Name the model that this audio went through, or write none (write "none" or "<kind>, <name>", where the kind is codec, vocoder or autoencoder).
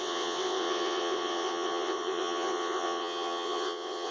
vocoder, WaveNeXt